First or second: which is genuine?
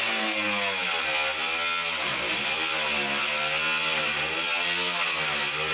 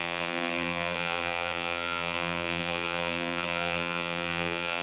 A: first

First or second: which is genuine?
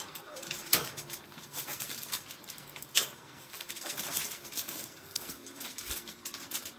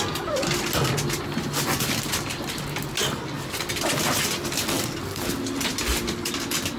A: second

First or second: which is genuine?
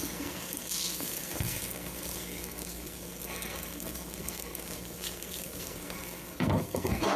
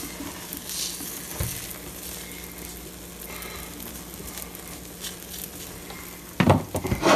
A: second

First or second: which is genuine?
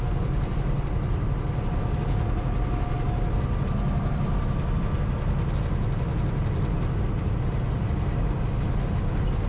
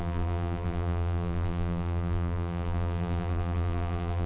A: first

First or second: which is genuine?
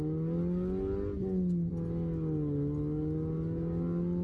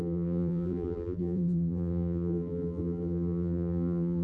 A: first